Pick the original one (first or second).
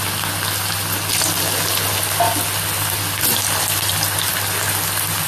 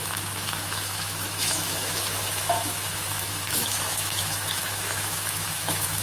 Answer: first